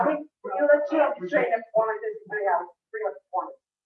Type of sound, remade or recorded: recorded